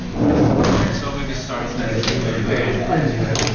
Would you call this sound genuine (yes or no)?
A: yes